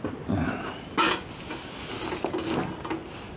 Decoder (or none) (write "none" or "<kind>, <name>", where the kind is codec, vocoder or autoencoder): none